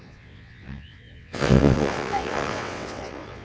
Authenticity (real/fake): fake